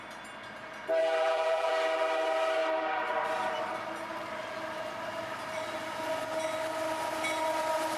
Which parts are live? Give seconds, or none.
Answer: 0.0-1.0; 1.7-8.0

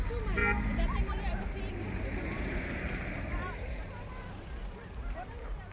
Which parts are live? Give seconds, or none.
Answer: 0.0-0.4; 3.8-5.7

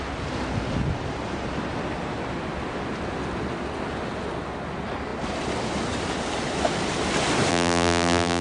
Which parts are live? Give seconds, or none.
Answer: 0.0-7.5

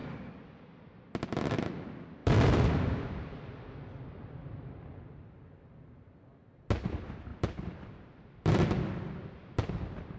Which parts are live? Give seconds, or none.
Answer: 0.0-2.2; 3.4-7.3; 8.9-10.2

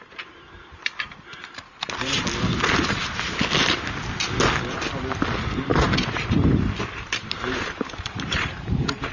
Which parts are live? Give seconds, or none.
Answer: 2.2-5.7